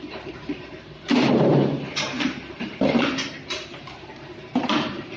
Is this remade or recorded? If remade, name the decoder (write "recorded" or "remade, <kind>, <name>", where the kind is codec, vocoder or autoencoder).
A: remade, vocoder, BigVGAN v2